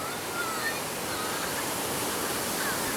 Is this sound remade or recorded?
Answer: recorded